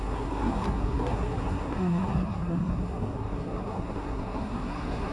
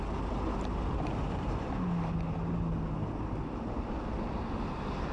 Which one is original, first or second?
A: second